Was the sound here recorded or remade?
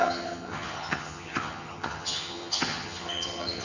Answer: remade